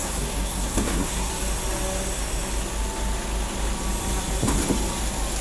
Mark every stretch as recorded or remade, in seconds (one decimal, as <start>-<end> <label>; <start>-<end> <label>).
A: 0.0-1.3 remade; 1.3-5.4 recorded